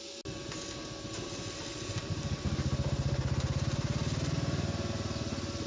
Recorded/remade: recorded